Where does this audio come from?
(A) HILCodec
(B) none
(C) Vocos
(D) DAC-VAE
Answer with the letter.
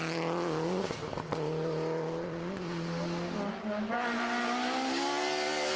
B